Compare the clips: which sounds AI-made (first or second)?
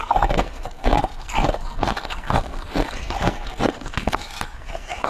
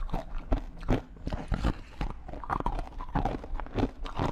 first